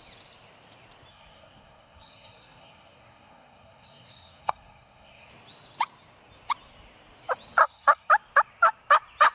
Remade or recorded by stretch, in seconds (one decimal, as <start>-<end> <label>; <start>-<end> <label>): 0.0-1.1 recorded; 1.1-5.3 remade; 5.3-7.6 recorded; 7.6-8.1 remade; 8.1-9.3 recorded